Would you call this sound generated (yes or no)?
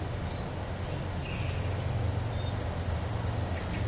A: no